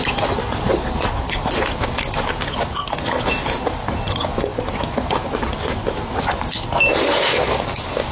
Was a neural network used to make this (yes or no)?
no